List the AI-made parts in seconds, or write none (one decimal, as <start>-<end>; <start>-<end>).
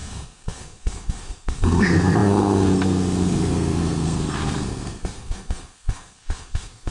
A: 0.0-6.9